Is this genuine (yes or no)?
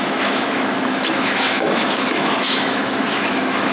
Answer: no